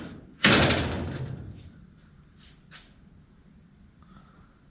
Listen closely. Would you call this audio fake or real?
real